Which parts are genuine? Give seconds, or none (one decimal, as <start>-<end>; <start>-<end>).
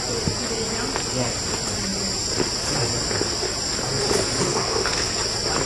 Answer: 0.0-4.5; 5.1-5.7